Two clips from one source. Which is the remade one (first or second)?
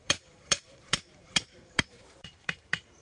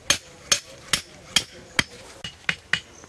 first